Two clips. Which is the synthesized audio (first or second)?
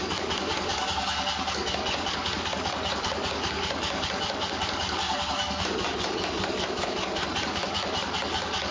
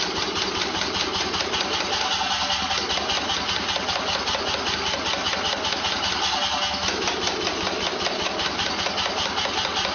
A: first